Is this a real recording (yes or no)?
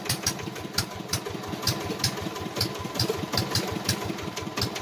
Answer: yes